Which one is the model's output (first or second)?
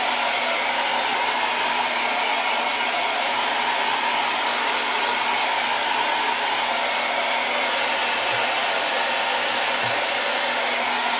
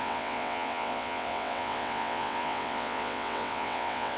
second